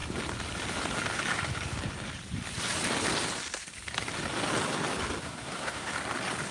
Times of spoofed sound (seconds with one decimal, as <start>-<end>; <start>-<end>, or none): 5.2-5.9